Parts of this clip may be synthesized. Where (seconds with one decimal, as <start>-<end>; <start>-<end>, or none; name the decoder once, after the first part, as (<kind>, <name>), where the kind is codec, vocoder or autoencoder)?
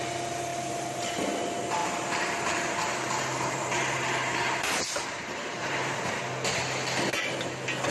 0.5-1.1 (vocoder, BigVGAN v2); 1.8-6.2